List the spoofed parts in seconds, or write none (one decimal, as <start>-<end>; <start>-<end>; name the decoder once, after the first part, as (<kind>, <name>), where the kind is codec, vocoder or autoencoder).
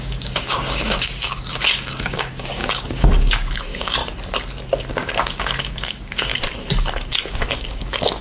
0.0-4.0 (codec, DAC); 4.9-6.3; 7.3-8.2